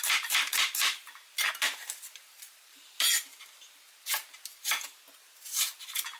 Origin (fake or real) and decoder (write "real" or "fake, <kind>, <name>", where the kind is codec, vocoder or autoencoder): fake, vocoder, BigVGAN v2